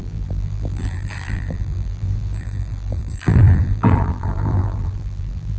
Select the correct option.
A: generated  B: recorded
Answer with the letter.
A